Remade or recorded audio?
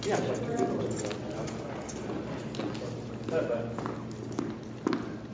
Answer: recorded